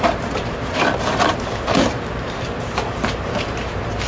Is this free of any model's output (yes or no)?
no